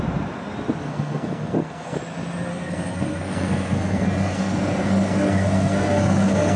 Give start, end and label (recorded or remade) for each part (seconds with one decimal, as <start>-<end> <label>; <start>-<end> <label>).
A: 0.0-0.9 recorded; 0.9-2.0 remade; 2.0-2.5 recorded; 2.5-6.6 remade